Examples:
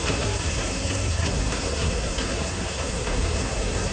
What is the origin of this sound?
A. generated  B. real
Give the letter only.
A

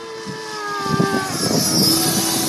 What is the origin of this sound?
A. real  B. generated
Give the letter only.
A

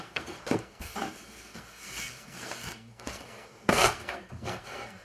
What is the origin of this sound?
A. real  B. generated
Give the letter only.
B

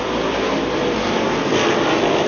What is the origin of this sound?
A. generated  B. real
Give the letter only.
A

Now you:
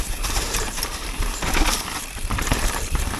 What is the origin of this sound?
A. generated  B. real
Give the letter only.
A